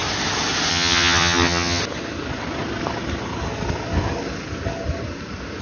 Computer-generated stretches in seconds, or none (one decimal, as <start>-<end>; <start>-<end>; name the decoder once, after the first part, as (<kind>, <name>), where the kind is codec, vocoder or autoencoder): 0.7-1.8 (vocoder, HiFi-GAN)